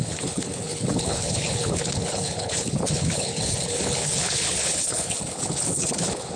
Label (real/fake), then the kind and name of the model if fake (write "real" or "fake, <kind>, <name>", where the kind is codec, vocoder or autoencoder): fake, codec, HILCodec